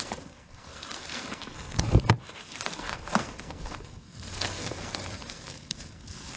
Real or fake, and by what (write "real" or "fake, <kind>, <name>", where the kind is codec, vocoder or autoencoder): fake, codec, SNAC